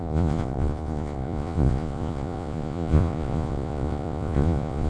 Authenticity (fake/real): fake